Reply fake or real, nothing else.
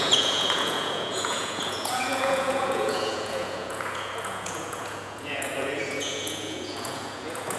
fake